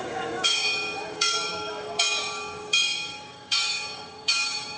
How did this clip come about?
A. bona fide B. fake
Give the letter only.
B